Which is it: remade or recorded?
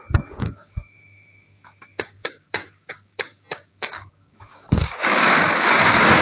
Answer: remade